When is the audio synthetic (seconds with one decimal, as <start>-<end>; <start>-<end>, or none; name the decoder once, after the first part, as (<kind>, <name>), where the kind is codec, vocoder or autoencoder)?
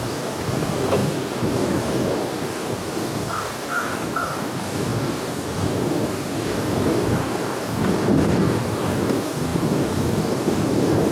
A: 0.0-11.1 (codec, DAC)